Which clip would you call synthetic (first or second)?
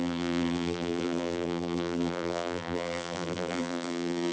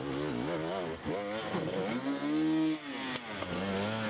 first